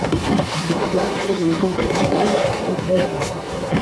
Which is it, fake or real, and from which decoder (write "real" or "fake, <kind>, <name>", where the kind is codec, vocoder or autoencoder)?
fake, codec, SNAC